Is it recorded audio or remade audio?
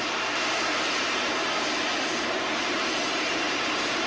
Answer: remade